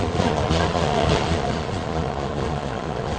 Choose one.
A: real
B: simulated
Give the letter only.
B